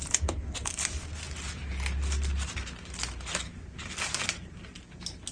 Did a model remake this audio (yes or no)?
no